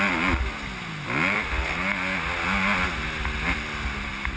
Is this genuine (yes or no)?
yes